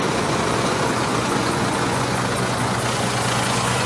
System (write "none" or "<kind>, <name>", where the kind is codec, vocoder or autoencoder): vocoder, Vocos